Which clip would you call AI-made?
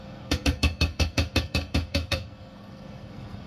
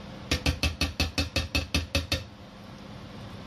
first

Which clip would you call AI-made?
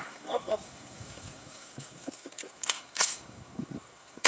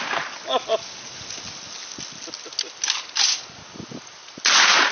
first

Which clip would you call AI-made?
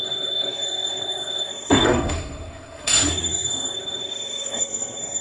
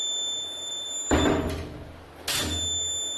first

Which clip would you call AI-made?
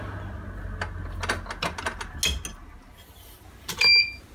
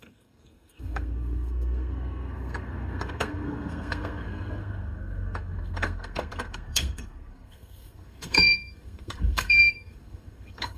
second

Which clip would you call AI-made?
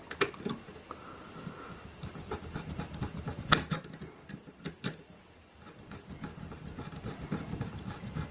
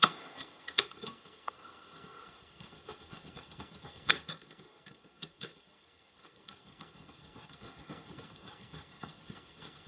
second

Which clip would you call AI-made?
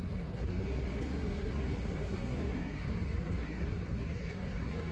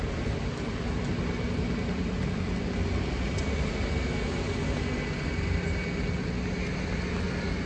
first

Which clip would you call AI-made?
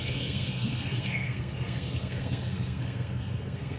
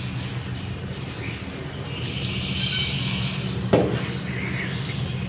first